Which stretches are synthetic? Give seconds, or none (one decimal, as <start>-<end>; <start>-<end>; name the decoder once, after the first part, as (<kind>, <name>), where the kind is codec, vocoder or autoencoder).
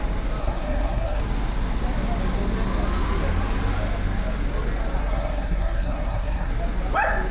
0.4-1.2 (codec, SNAC); 5.0-6.5